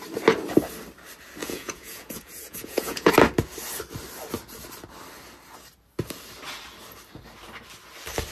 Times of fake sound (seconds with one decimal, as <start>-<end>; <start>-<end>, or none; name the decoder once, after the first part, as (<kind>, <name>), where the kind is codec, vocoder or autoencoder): 1.4-3.1 (vocoder, Vocos)